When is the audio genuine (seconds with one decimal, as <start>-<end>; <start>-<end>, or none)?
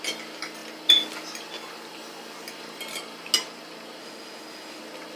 0.0-4.0; 4.8-5.2